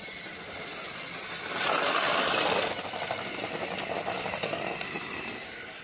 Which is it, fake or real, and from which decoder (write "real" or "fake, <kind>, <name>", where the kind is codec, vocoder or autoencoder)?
real